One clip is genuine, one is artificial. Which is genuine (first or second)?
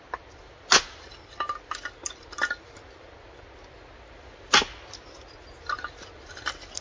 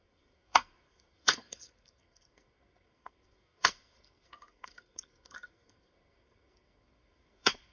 first